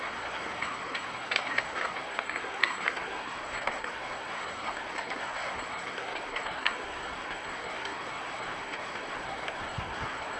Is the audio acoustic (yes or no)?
no